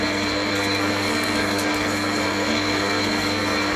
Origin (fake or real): fake